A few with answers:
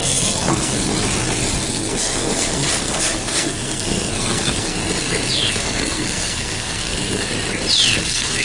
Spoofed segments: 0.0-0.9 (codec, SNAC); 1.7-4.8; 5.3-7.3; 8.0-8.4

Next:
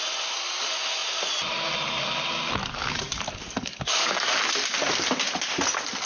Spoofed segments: 2.6-4.1 (codec, DAC)

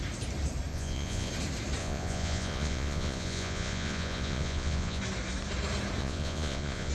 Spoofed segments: 0.7-1.3 (vocoder, Vocos); 1.8-5.0; 6.0-6.9

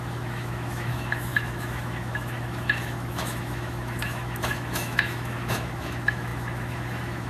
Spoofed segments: 0.0-7.3 (autoencoder, DAC-VAE)

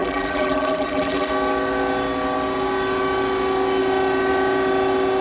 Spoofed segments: 0.0-1.3 (vocoder, BigVGAN v2)

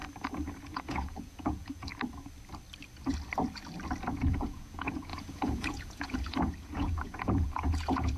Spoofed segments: 0.6-1.9 (vocoder, Vocos); 4.2-8.2

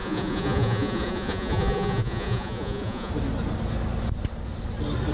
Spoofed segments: 0.0-3.1 (vocoder, Vocos)

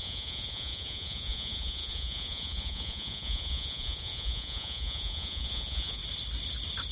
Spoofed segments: 0.0-6.0 (vocoder, Vocos)